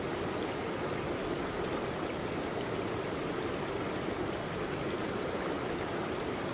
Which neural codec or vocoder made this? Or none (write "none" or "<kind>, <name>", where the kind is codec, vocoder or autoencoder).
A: none